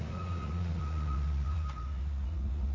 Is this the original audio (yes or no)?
no